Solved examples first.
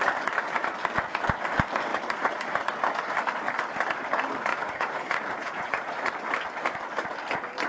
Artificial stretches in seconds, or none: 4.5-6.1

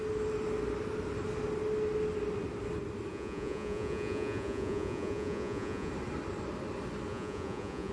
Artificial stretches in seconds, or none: 3.1-5.9; 7.1-7.9